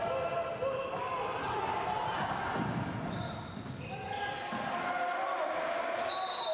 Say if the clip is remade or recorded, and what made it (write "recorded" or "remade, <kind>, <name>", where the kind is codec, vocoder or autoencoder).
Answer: recorded